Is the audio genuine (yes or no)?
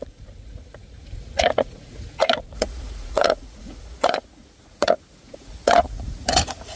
no